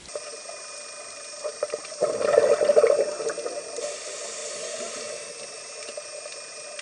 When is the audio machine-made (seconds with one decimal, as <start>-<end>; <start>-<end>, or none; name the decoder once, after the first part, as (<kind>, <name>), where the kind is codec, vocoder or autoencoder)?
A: none